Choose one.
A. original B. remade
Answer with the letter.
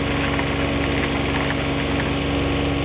A